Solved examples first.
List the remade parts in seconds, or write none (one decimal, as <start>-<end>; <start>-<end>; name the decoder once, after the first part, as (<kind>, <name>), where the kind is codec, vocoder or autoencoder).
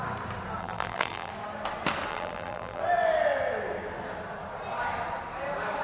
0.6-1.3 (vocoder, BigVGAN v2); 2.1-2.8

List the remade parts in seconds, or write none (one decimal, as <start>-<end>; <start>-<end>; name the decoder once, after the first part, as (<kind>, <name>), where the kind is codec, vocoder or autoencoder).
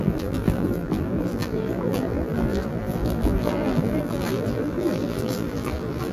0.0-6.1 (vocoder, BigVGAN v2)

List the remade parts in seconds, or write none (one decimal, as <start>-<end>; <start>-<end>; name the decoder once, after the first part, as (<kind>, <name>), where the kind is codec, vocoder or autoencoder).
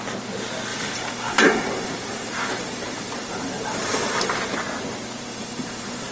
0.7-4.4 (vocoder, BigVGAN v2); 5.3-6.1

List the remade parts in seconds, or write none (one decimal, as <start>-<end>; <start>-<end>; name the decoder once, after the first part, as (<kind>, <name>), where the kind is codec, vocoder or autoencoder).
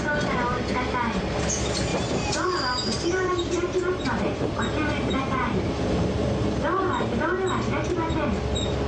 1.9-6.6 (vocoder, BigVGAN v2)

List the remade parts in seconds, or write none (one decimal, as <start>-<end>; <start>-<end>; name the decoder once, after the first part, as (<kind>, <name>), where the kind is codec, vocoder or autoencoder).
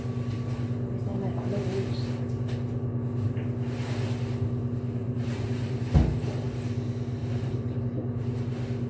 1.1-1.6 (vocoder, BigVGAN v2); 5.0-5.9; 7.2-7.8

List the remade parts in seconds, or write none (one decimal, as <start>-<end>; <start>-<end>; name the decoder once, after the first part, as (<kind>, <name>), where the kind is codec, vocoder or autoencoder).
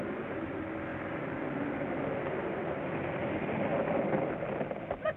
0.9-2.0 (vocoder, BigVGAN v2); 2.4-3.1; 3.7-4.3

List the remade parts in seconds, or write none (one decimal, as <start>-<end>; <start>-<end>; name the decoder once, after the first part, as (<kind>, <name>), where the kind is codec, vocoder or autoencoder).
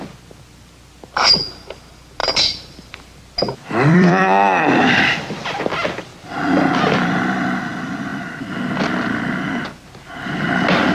2.2-2.9 (vocoder, BigVGAN v2); 3.9-5.6